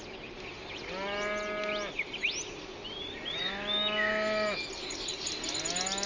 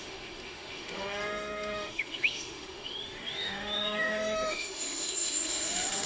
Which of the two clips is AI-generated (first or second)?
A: second